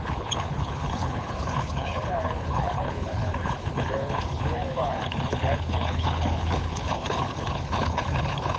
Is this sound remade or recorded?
remade